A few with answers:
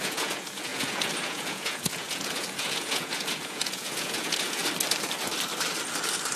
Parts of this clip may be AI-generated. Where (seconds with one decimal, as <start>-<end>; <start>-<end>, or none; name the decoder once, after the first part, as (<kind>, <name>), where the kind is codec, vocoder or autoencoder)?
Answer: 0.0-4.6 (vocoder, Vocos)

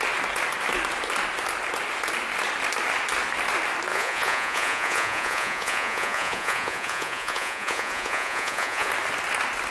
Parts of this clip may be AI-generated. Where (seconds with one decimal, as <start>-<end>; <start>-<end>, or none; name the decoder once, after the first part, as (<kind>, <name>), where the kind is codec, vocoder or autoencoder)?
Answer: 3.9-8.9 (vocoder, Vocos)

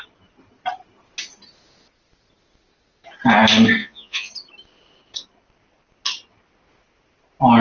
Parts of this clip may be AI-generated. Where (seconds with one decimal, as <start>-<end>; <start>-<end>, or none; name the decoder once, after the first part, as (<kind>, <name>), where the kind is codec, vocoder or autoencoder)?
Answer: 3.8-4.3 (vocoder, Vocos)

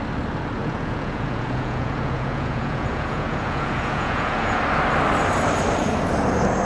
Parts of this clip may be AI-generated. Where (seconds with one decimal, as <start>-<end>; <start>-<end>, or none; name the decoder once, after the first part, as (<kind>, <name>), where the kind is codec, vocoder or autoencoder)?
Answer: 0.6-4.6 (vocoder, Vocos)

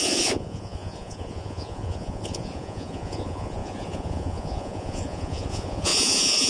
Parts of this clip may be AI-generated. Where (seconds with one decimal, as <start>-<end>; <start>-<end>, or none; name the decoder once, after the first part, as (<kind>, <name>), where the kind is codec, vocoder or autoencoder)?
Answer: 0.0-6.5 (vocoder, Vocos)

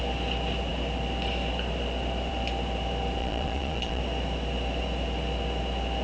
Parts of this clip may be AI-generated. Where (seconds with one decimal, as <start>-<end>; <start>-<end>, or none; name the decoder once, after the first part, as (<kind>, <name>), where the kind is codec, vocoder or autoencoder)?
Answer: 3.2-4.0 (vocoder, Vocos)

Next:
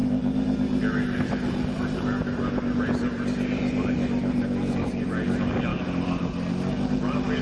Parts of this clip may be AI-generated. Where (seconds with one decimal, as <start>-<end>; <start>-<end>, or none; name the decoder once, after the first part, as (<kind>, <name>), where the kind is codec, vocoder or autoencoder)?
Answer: none

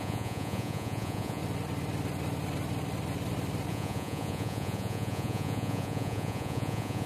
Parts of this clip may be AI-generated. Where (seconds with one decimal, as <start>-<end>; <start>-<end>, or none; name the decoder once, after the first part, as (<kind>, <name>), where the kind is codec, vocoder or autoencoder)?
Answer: 0.0-1.4 (vocoder, Vocos); 3.7-7.1